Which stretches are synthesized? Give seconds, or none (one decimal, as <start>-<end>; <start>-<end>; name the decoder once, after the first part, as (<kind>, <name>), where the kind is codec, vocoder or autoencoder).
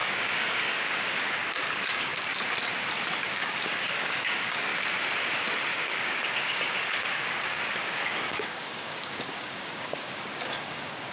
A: 0.0-2.1 (codec, DAC); 3.3-4.7; 5.7-11.1